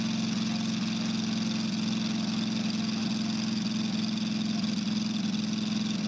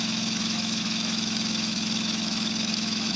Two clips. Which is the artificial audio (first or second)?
second